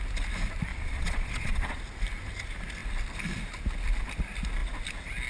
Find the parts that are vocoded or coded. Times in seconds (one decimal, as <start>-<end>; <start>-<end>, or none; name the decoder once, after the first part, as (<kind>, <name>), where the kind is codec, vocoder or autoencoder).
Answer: 0.7-1.8 (vocoder, Vocos)